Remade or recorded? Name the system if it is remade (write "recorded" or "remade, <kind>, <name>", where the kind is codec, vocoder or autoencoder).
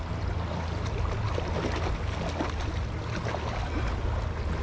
recorded